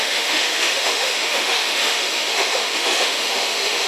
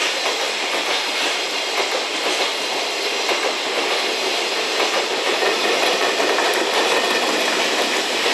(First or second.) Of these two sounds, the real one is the second